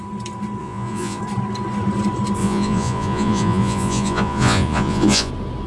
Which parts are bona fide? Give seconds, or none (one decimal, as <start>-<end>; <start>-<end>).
0.0-0.6; 1.2-2.4; 5.3-5.7